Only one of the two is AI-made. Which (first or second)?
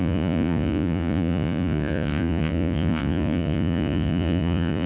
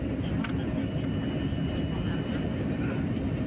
first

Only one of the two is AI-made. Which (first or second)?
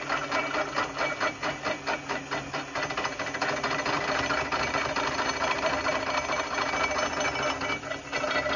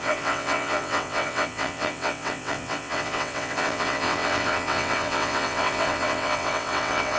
second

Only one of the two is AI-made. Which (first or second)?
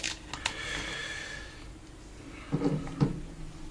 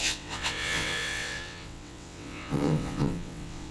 second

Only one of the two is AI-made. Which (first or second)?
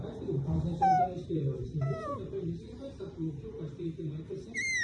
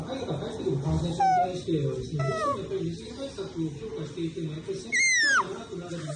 first